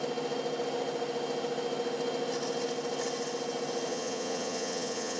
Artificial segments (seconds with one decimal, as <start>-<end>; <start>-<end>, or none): 3.9-5.2